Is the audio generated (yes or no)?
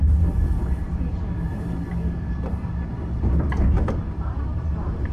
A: no